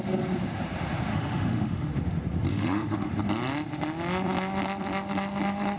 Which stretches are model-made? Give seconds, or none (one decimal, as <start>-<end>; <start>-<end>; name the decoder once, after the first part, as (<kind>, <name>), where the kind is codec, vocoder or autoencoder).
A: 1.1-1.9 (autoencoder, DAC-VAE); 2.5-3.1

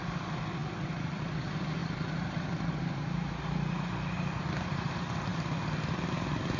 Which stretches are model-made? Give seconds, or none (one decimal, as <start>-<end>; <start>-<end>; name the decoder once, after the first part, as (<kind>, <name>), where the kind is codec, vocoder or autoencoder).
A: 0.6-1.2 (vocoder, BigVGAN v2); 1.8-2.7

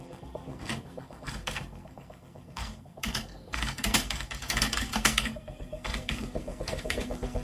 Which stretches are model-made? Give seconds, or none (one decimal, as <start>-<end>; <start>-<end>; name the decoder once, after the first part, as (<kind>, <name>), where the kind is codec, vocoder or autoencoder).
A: 0.0-7.4 (codec, SNAC)